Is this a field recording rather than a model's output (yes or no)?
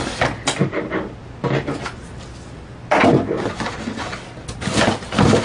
yes